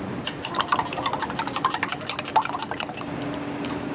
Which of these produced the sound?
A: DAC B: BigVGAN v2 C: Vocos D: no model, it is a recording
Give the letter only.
D